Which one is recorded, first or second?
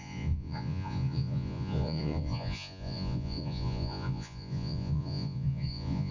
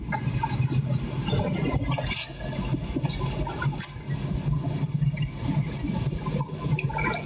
second